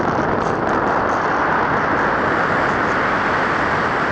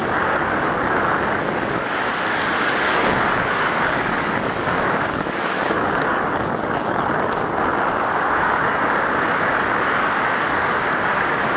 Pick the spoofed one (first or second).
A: second